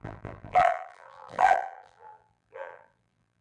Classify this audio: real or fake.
fake